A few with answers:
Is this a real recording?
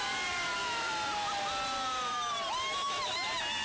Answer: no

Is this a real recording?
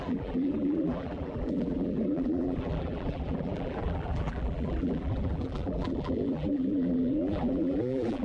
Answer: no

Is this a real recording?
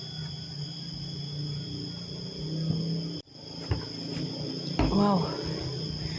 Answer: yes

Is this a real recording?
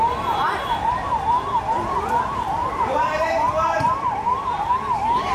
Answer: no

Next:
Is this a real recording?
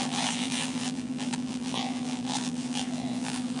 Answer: no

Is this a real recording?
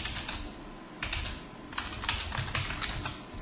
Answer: yes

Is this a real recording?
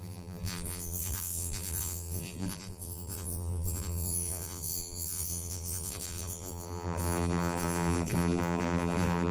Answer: no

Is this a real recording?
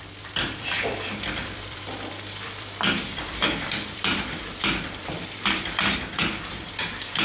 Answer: no